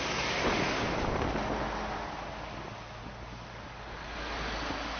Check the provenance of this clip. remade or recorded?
recorded